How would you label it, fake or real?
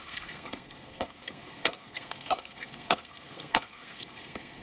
fake